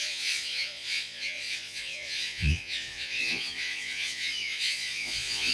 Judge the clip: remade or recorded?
remade